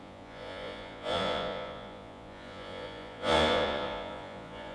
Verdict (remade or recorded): remade